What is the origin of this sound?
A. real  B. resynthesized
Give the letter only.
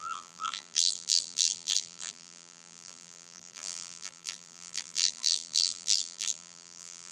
B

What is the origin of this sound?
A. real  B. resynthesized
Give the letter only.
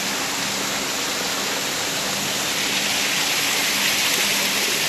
A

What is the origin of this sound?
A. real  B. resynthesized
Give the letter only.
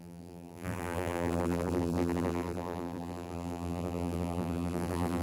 B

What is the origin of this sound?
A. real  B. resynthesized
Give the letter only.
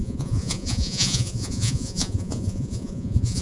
B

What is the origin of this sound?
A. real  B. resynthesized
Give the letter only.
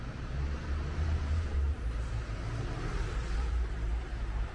B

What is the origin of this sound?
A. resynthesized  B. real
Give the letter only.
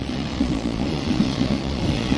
A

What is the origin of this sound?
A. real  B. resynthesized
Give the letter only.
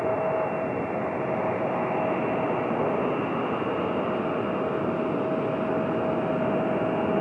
A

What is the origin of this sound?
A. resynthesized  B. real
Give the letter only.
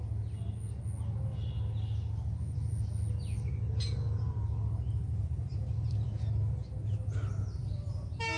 B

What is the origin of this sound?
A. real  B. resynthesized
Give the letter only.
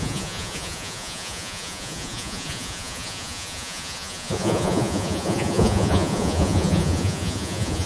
B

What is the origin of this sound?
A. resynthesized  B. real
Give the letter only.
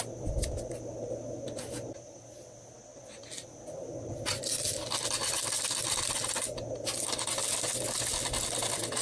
B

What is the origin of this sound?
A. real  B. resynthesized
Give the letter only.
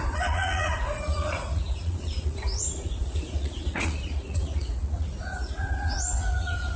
B